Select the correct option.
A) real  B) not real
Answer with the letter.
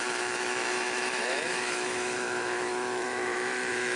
B